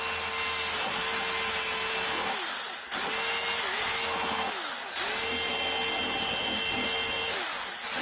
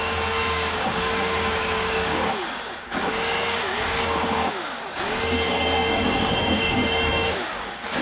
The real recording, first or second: first